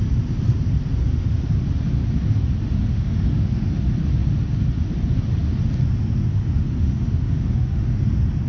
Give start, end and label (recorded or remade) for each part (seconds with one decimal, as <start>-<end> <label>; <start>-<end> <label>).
0.0-2.9 recorded; 2.9-3.7 remade; 3.7-6.3 recorded; 6.3-8.0 remade; 8.0-8.5 recorded